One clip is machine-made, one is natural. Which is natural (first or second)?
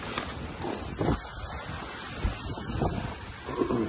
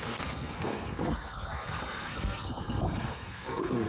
first